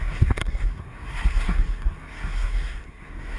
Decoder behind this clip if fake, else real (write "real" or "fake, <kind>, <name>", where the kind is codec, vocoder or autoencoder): fake, codec, SNAC